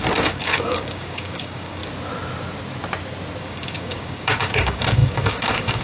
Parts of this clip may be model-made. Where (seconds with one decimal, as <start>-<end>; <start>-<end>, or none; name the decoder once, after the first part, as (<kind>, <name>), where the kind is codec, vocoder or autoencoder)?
0.0-1.8 (codec, DAC); 3.4-5.8